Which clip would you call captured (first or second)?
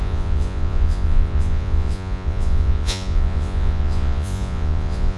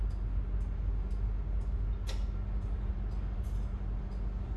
second